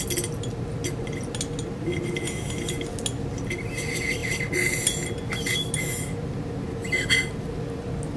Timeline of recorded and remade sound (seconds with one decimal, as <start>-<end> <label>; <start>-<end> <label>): 0.0-8.2 recorded